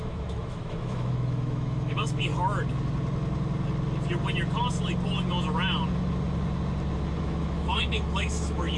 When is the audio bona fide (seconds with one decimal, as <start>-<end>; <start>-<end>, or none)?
2.3-7.2